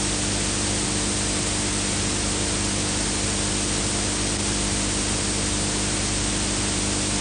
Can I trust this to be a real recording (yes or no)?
yes